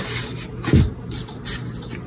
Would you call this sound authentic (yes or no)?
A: yes